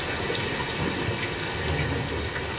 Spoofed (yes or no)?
no